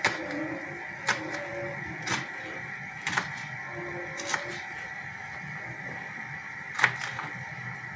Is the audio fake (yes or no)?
no